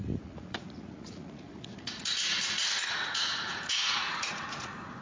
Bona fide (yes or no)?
no